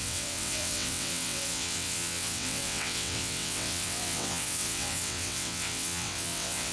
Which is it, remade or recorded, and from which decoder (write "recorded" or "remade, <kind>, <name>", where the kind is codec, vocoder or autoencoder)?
remade, vocoder, WaveNeXt